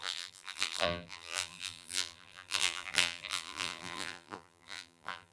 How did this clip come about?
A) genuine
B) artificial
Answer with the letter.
B